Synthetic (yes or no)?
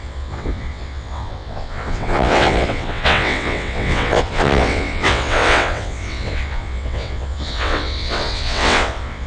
yes